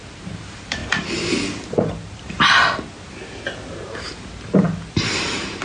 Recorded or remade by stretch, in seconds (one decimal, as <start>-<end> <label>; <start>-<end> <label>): 0.0-0.8 remade; 0.8-3.7 recorded; 3.7-5.6 remade